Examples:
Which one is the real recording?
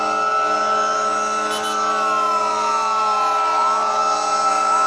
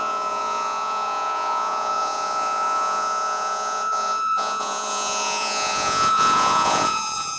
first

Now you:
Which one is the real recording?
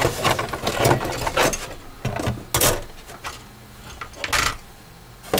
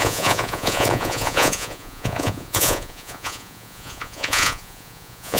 first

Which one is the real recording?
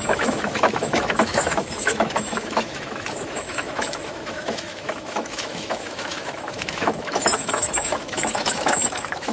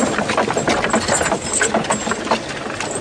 second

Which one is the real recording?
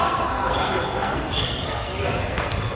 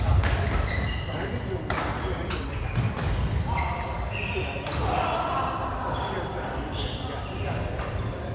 second